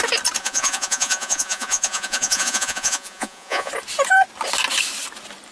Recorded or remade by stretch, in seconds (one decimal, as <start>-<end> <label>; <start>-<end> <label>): 0.0-0.4 recorded; 0.4-3.7 remade; 3.7-5.5 recorded